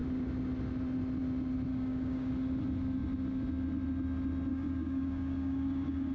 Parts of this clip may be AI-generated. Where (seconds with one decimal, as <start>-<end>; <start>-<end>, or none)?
1.7-2.3; 4.5-6.1